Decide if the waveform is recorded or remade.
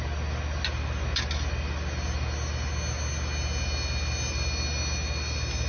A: recorded